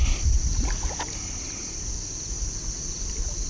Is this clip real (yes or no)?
yes